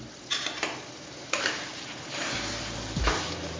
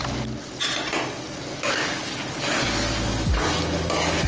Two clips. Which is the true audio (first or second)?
second